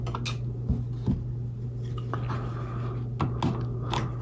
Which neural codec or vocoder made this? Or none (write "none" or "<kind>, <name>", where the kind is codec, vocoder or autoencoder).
none